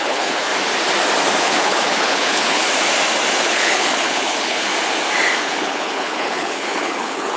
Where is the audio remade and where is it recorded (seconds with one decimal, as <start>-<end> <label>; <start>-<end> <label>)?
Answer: 0.0-0.5 remade; 0.5-1.4 recorded; 1.4-2.7 remade; 2.7-3.4 recorded; 3.4-4.7 remade; 4.7-5.4 recorded; 5.4-7.4 remade